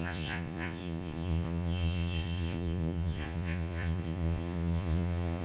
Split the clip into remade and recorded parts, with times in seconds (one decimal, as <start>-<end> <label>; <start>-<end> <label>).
0.0-5.4 remade